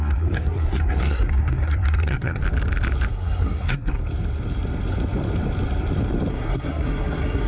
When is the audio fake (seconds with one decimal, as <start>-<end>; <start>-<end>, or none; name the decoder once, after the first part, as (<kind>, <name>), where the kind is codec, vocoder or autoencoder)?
0.0-2.4 (codec, SNAC); 3.1-4.0; 6.3-7.5